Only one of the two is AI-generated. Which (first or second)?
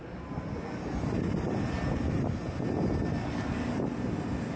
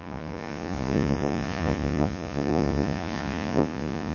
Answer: second